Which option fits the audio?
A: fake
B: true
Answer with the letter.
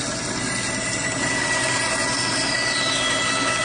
B